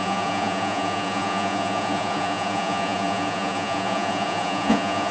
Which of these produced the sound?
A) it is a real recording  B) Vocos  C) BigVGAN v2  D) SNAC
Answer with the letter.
B